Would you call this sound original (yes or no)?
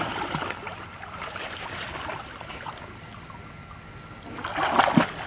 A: yes